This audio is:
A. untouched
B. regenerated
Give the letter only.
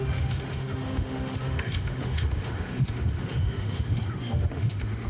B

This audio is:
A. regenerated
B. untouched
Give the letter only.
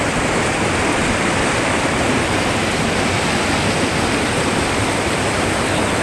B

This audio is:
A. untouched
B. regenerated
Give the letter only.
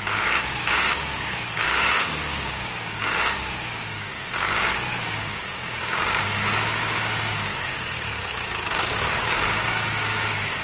B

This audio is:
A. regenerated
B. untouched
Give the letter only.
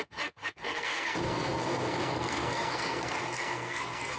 A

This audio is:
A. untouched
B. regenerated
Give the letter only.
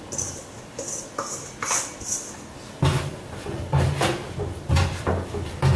A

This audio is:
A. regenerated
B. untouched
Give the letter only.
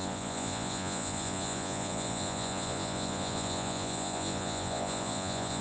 A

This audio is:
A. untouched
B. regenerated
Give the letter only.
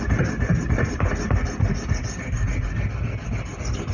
A